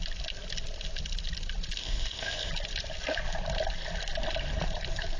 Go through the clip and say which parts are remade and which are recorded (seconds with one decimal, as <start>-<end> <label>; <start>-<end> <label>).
0.0-1.8 recorded; 1.8-2.5 remade; 2.5-5.2 recorded